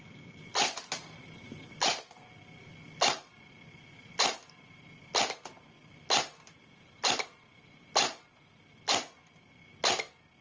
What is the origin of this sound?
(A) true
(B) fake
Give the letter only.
A